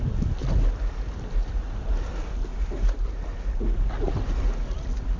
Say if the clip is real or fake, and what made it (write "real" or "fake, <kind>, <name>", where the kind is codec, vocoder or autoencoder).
real